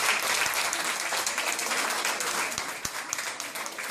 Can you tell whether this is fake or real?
real